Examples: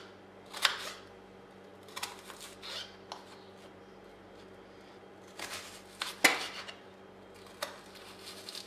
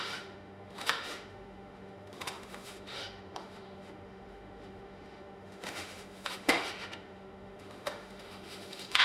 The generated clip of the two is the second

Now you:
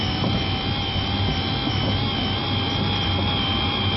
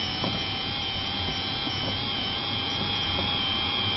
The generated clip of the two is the second